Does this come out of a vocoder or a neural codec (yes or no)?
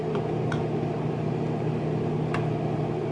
no